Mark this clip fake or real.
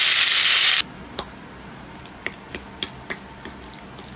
real